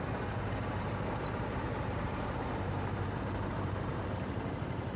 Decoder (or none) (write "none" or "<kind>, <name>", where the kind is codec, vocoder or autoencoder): vocoder, BigVGAN v2